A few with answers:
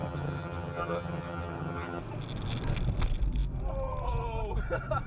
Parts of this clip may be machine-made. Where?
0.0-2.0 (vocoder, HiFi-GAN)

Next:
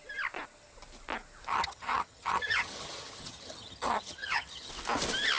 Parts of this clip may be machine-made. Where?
1.5-4.7 (vocoder, HiFi-GAN)